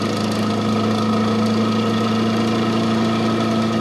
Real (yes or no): yes